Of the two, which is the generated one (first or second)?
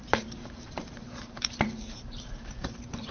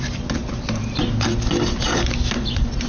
first